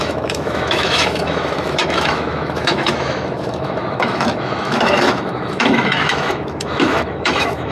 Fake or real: fake